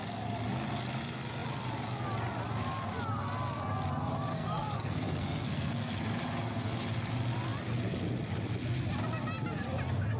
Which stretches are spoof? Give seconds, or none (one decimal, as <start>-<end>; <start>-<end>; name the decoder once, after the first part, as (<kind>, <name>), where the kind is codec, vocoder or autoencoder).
4.3-6.0 (codec, SNAC)